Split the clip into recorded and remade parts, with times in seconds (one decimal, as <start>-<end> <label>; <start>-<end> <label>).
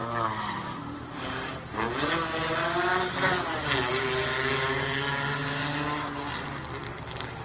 0.0-7.4 recorded